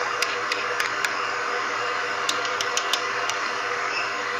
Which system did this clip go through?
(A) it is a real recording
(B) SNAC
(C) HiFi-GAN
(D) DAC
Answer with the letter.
D